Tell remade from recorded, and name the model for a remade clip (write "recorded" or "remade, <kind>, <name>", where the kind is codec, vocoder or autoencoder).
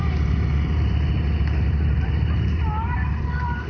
remade, vocoder, BigVGAN v2